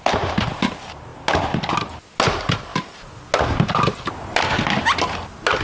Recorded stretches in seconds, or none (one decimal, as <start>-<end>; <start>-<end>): 0.0-5.6

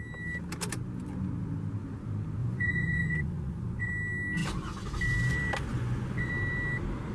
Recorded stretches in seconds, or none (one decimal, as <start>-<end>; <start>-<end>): 0.0-2.4; 3.9-5.7; 6.3-7.1

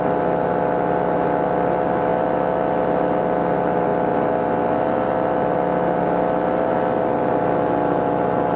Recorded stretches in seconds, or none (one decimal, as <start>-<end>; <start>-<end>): 0.0-8.6

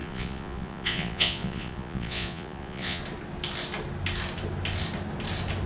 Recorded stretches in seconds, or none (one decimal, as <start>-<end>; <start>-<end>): 3.0-5.7